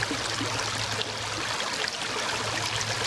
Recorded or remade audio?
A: recorded